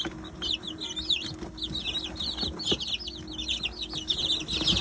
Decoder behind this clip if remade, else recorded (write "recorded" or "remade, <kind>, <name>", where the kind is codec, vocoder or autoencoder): recorded